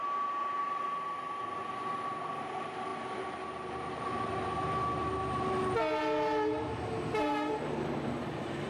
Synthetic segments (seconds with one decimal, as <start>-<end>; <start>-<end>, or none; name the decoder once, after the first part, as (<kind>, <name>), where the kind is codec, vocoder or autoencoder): none